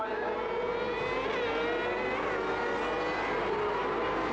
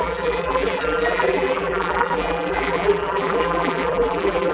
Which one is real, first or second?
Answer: first